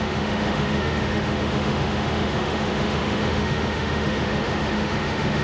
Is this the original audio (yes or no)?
no